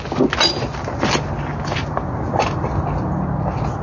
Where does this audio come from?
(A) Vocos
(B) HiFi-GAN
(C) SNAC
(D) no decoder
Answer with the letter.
D